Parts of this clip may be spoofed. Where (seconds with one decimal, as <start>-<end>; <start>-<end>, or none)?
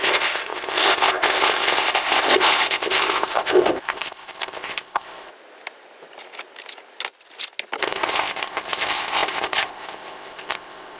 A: 0.0-5.3; 7.8-11.0